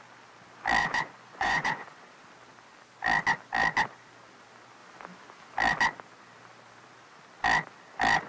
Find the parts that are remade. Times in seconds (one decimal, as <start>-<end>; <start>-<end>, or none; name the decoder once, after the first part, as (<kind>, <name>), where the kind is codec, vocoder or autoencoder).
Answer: 0.8-2.0 (vocoder, Vocos)